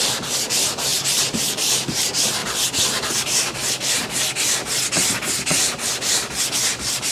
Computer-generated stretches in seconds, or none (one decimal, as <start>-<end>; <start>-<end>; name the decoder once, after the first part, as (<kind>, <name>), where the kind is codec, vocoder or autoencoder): 0.0-2.4 (vocoder, BigVGAN v2); 3.2-3.6; 6.4-7.1